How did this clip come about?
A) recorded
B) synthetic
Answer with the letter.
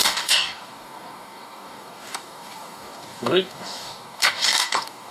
B